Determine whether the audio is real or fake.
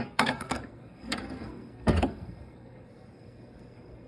fake